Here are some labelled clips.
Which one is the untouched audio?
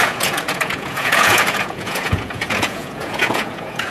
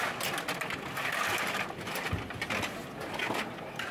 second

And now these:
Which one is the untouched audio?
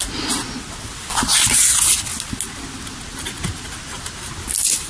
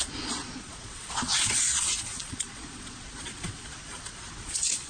first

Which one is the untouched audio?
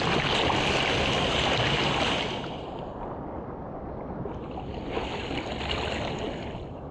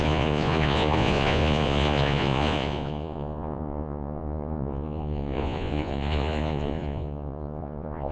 first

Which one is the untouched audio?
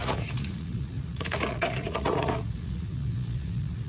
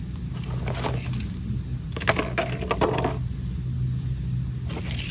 second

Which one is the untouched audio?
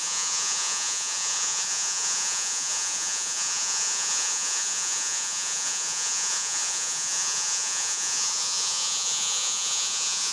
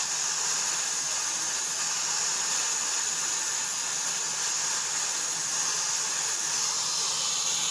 second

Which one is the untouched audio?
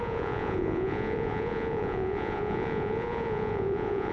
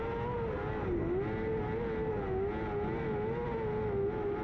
second